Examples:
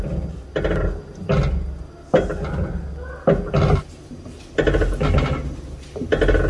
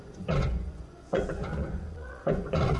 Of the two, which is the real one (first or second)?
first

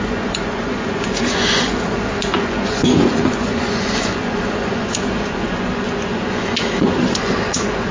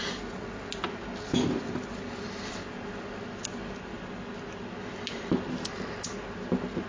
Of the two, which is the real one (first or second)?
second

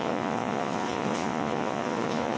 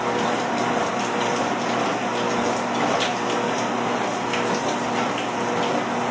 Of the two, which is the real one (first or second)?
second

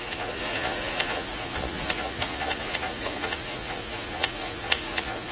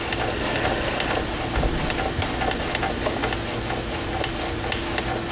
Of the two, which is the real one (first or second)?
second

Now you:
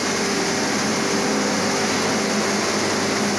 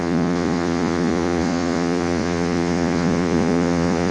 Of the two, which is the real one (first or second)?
first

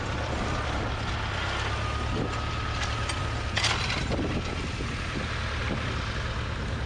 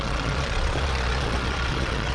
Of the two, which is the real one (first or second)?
first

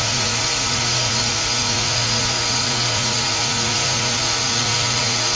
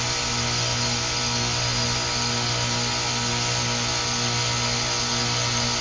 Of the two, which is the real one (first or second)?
second